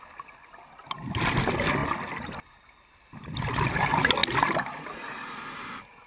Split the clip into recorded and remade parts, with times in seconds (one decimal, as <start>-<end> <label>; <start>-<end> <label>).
0.0-6.1 recorded